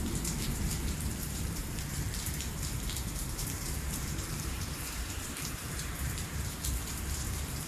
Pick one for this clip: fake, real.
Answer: fake